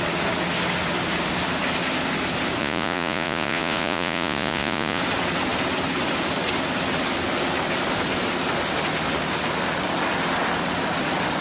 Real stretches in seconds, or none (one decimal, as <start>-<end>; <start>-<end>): 0.0-2.6; 5.0-11.4